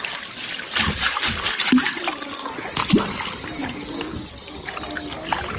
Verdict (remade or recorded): recorded